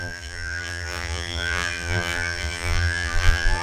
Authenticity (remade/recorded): remade